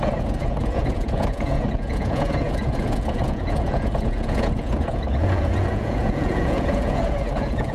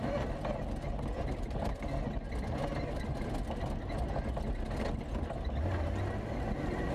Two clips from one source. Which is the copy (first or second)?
first